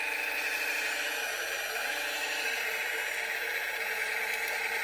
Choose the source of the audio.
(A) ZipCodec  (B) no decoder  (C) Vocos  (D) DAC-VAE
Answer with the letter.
B